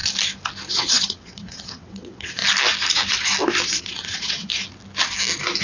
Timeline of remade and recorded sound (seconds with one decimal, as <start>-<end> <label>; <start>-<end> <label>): 0.0-0.7 recorded; 0.7-2.4 remade; 2.4-3.8 recorded; 3.8-4.5 remade; 4.5-5.6 recorded